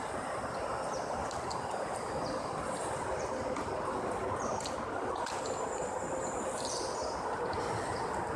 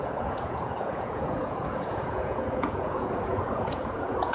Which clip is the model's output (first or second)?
second